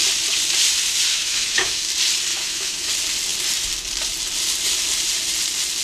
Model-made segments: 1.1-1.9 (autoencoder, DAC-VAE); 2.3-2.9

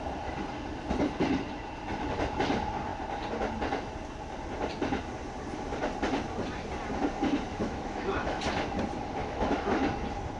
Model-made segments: 7.5-8.4 (autoencoder, DAC-VAE); 9.2-9.7

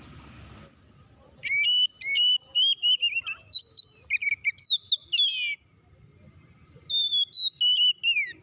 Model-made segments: none

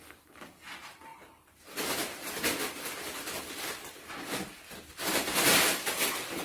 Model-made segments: none